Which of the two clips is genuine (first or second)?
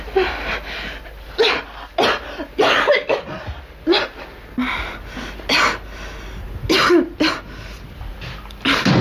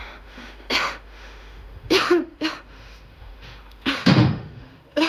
first